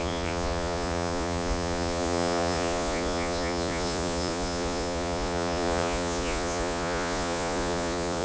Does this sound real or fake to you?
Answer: fake